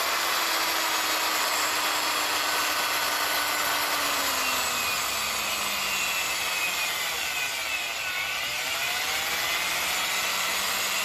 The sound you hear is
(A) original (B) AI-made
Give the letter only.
A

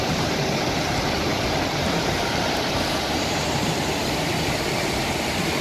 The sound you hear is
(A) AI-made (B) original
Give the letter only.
A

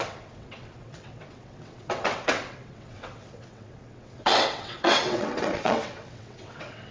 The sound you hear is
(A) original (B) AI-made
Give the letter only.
B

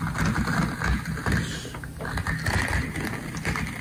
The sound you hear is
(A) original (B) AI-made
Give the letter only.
A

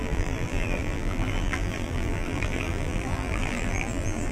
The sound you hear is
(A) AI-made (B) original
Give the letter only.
A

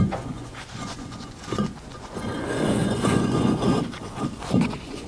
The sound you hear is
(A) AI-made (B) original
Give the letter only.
A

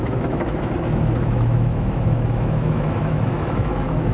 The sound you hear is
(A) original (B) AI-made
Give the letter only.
B